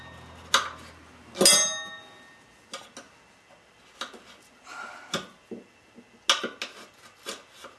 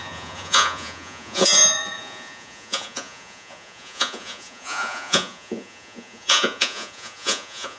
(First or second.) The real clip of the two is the first